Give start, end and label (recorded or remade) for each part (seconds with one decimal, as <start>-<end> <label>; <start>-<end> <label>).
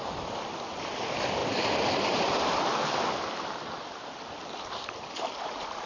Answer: 0.0-5.9 recorded